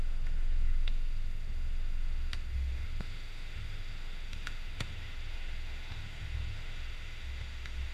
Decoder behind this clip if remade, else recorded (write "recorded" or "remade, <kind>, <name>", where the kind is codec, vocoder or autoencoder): remade, autoencoder, DAC-VAE